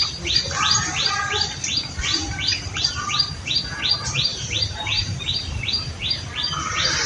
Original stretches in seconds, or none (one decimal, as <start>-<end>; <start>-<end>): 0.0-4.3